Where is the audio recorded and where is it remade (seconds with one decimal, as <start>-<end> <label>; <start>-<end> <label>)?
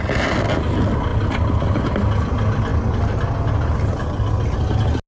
0.0-5.1 recorded